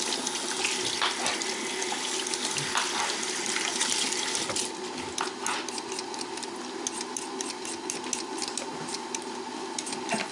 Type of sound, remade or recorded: recorded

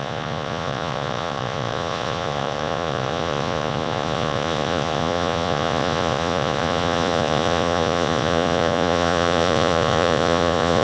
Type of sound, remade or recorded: remade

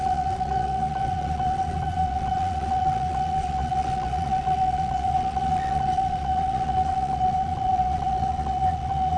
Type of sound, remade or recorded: remade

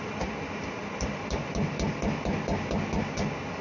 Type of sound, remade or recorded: recorded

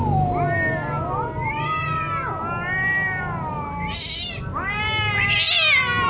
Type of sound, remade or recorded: recorded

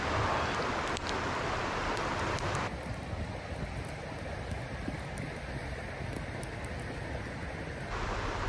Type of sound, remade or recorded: recorded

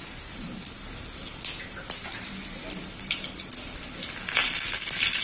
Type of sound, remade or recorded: recorded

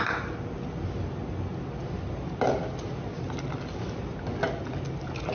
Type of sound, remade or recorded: recorded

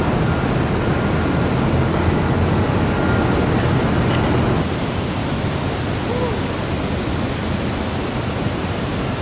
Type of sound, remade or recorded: recorded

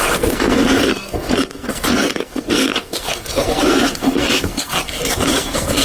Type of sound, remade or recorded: remade